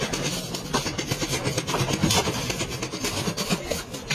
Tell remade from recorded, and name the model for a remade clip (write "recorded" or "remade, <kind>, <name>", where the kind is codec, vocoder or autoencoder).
recorded